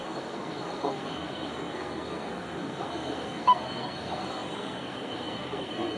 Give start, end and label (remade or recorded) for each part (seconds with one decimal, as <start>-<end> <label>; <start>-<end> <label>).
0.0-6.0 remade